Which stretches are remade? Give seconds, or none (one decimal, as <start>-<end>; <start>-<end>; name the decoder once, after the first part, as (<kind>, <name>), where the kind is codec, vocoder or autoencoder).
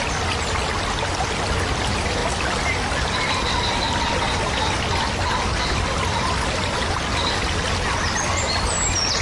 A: none